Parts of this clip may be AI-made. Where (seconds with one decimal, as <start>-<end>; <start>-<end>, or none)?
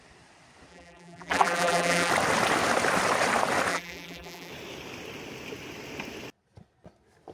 0.7-2.1; 3.7-4.5